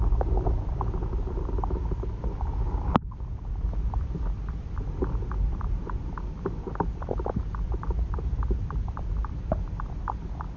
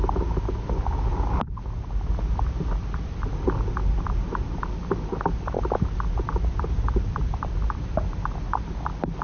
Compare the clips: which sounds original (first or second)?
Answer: second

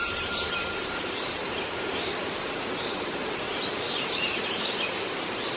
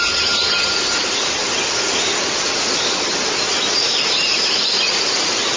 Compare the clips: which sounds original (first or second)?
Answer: second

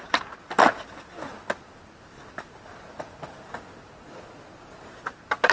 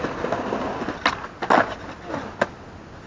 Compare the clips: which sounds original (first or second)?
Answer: second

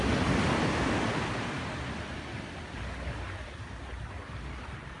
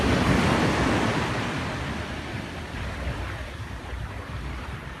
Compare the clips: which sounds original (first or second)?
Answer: first